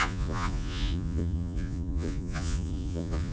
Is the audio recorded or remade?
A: remade